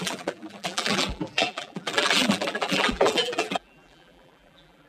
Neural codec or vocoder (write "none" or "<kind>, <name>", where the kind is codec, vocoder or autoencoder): vocoder, BigVGAN v2